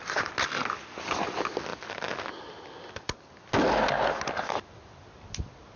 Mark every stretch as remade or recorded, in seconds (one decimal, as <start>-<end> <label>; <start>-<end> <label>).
0.0-5.8 recorded